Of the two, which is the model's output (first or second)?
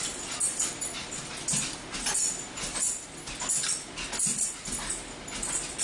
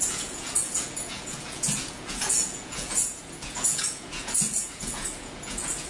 second